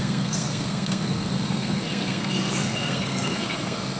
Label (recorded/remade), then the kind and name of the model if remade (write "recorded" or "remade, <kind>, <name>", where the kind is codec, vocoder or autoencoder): remade, codec, SNAC